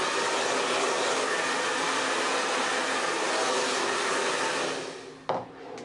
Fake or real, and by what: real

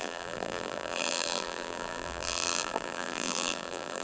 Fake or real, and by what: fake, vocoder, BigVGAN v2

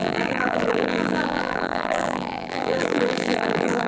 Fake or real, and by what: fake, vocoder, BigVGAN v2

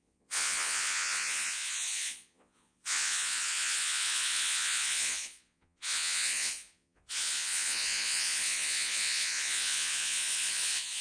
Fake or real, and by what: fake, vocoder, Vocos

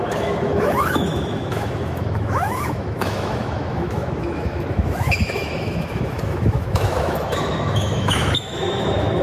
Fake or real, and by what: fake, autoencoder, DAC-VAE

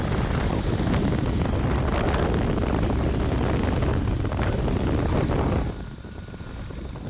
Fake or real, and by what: real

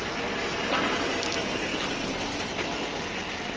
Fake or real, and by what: real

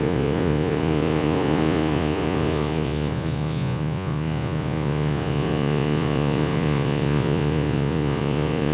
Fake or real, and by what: fake, vocoder, Vocos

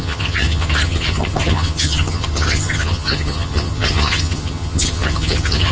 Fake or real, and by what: fake, vocoder, HiFi-GAN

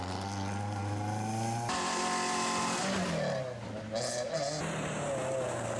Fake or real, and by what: real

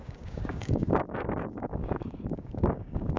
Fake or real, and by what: fake, codec, DAC